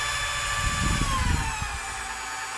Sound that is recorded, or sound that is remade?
recorded